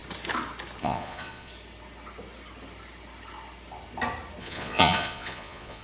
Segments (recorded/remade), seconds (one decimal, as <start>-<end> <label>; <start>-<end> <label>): 0.0-0.8 recorded; 0.8-1.5 remade; 1.5-4.4 recorded; 4.4-5.8 remade